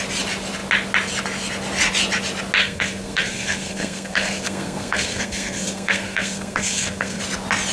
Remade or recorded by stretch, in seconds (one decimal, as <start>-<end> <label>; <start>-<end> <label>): 0.0-2.6 recorded; 2.6-7.2 remade; 7.2-7.7 recorded